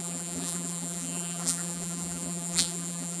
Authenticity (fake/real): fake